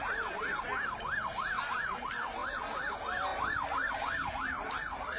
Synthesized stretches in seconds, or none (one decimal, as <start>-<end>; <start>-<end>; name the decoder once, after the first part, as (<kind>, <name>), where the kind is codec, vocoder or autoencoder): 2.4-2.9 (vocoder, BigVGAN v2); 3.3-3.9